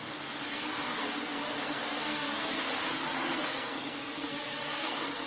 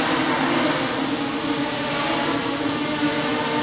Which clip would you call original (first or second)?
second